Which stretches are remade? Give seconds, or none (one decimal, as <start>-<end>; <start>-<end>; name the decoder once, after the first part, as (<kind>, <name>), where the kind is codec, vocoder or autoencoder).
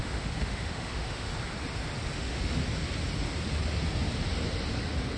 0.0-1.3 (autoencoder, DAC-VAE); 2.1-2.6